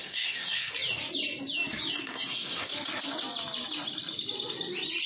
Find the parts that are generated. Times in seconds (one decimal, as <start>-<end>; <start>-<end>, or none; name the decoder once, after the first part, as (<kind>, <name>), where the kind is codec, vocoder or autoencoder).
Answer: 0.0-0.7 (codec, SNAC); 1.9-2.7